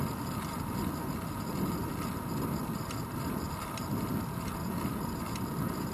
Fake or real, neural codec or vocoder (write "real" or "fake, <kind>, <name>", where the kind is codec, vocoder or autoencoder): real